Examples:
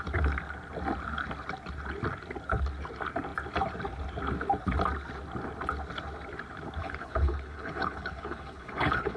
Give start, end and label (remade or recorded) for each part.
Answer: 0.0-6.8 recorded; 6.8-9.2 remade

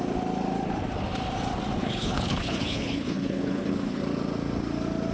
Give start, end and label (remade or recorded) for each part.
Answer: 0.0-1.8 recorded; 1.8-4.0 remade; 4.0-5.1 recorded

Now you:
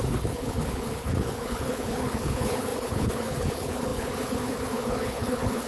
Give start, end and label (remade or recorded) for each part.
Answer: 0.0-5.7 remade

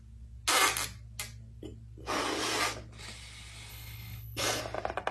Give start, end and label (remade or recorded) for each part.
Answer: 0.0-3.7 recorded; 3.7-4.6 remade; 4.6-5.1 recorded

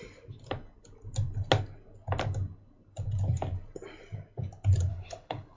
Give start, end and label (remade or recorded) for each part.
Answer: 0.0-4.9 recorded; 4.9-5.6 remade

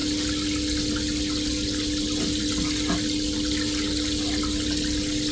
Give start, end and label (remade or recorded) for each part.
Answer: 0.0-5.3 recorded